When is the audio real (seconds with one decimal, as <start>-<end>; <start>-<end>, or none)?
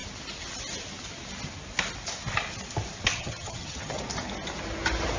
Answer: 0.0-3.1; 4.0-5.2